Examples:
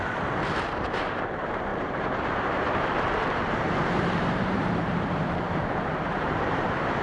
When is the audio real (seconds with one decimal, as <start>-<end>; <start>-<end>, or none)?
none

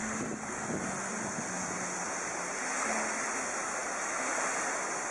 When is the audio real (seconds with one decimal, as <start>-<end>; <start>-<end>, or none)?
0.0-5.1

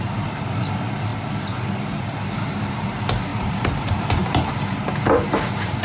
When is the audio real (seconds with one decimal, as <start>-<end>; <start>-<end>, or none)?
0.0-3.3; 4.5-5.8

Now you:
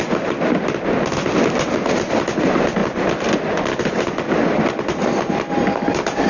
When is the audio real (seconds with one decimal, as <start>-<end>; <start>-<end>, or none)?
0.0-6.3

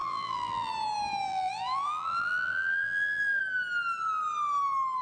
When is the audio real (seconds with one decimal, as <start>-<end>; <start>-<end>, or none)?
0.7-1.3; 3.4-5.0

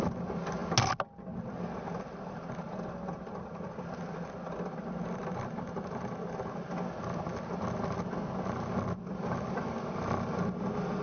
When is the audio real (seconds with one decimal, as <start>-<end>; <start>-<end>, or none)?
0.0-11.0

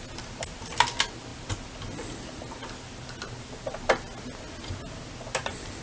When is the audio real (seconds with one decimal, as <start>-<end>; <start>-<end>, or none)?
0.0-5.8